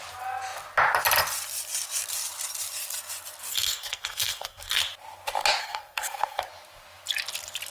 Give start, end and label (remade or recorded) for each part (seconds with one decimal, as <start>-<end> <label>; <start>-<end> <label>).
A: 0.0-3.5 recorded; 3.5-4.8 remade; 4.8-5.6 recorded; 5.6-6.4 remade; 6.4-7.7 recorded